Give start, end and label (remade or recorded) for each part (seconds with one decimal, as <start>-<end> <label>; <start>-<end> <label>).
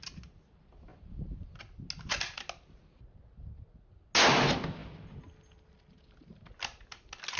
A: 0.0-7.4 recorded